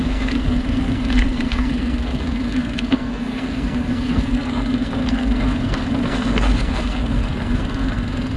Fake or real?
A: fake